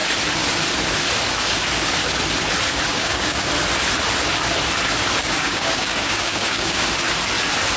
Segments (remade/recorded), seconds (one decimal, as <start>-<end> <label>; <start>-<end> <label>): 0.0-2.9 recorded; 2.9-3.5 remade; 3.5-5.2 recorded; 5.2-6.8 remade; 6.8-7.8 recorded